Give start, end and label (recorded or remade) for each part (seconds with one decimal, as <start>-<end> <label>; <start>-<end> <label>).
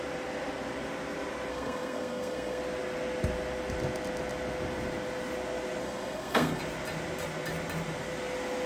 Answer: 0.0-1.5 recorded; 1.5-2.6 remade; 2.6-5.8 recorded; 5.8-6.6 remade; 6.6-8.7 recorded